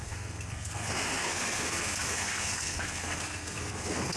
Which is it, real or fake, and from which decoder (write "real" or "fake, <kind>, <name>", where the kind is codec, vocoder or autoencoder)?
fake, codec, SNAC